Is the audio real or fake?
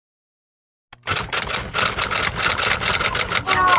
real